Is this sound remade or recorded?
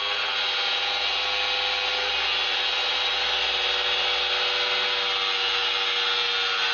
recorded